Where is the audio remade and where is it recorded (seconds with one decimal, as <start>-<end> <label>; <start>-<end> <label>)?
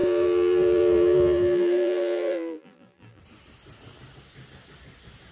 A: 0.0-3.2 remade; 3.2-5.3 recorded